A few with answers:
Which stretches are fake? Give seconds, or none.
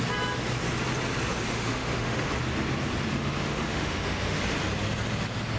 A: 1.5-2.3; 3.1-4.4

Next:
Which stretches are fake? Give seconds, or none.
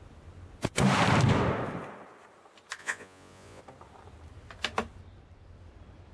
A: 2.8-3.6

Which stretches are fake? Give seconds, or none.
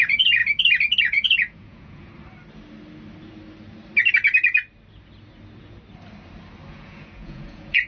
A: 0.0-0.4; 1.0-2.1; 6.7-7.9